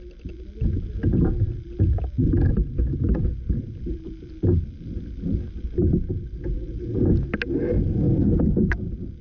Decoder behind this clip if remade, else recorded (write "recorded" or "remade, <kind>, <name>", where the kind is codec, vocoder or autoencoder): recorded